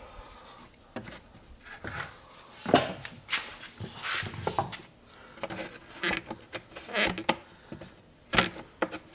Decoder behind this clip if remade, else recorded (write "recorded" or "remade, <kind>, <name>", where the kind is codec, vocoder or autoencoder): recorded